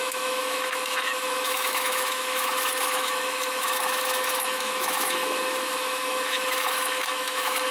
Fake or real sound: fake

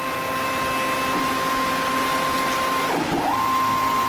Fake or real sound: real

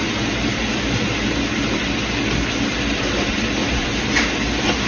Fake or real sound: real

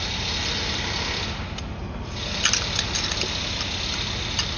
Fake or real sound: real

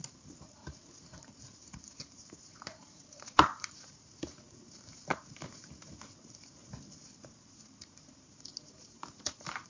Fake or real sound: fake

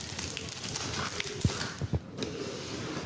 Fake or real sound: real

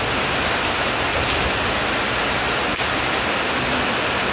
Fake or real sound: real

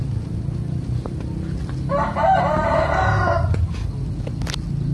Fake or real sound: real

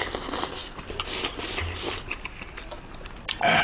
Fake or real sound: real